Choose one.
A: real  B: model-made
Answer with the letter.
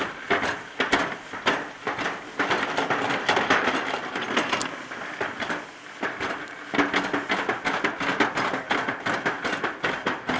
A